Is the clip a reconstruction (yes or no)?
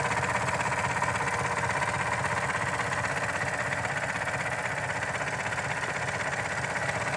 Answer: no